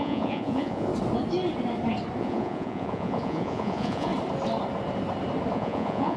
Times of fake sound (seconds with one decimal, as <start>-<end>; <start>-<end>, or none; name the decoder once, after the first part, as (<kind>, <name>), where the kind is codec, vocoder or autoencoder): 0.0-0.9 (vocoder, Vocos); 2.2-4.1; 5.5-6.2